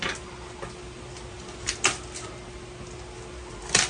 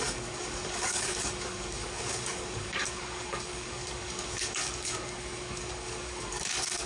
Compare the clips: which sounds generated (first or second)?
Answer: second